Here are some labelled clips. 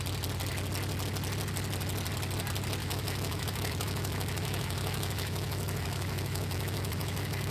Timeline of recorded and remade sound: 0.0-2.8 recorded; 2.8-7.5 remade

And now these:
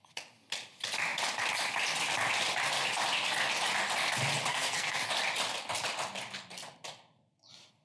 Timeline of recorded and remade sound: 0.0-4.5 recorded; 4.5-5.1 remade; 5.1-7.8 recorded

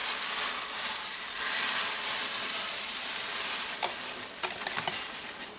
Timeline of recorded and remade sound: 0.0-5.6 remade

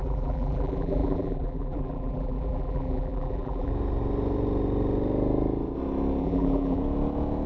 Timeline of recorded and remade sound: 0.0-3.7 remade; 3.7-6.2 recorded; 6.2-6.8 remade; 6.8-7.5 recorded

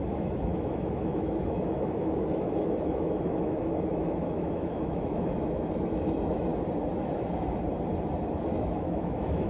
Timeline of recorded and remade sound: 0.0-6.5 remade; 6.5-8.5 recorded; 8.5-9.5 remade

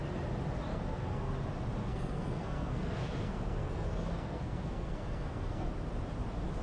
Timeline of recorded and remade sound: 0.0-0.7 recorded; 0.7-1.3 remade; 1.3-1.8 recorded; 1.8-5.7 remade; 5.7-6.6 recorded

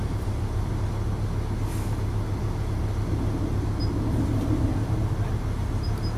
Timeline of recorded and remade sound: 0.0-0.7 remade; 0.7-5.6 recorded; 5.6-6.2 remade

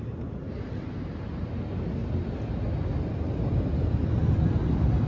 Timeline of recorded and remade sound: 0.0-5.1 recorded